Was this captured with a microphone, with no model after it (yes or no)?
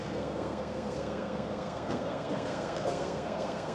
no